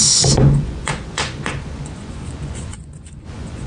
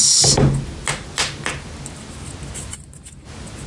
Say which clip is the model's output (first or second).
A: first